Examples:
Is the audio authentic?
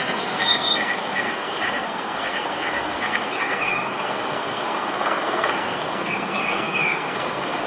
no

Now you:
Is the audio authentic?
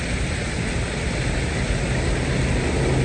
yes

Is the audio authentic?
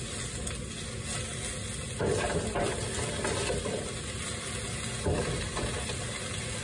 yes